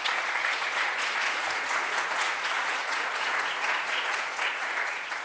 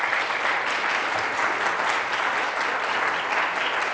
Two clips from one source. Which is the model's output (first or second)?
first